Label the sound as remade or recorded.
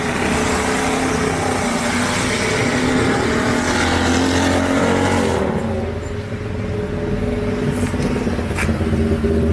recorded